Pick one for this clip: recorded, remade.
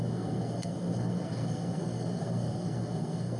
remade